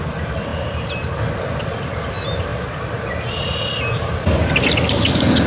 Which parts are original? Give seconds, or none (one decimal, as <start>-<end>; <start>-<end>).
0.0-5.5